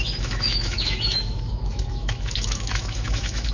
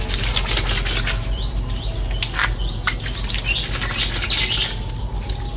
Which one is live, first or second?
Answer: second